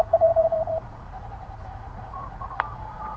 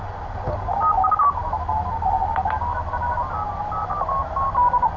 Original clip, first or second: second